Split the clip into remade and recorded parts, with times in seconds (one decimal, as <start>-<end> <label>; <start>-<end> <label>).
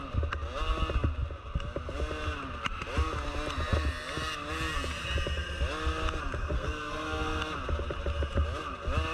0.0-6.4 recorded; 6.4-7.4 remade; 7.4-9.1 recorded